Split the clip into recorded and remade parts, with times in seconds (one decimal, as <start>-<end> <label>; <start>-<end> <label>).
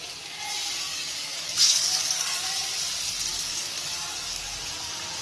0.0-0.9 recorded; 0.9-2.5 remade; 2.5-3.3 recorded; 3.3-4.7 remade; 4.7-5.2 recorded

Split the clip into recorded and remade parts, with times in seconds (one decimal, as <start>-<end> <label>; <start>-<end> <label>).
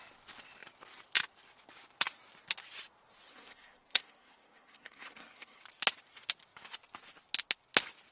0.0-3.3 recorded; 3.3-5.6 remade; 5.6-8.1 recorded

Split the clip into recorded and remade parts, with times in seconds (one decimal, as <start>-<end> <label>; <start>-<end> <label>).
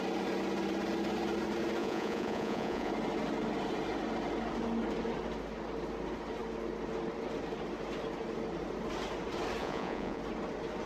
0.0-1.8 recorded; 1.8-2.9 remade; 2.9-9.6 recorded; 9.6-10.2 remade; 10.2-10.9 recorded